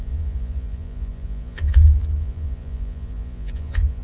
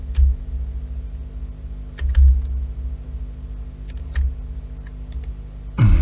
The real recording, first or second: second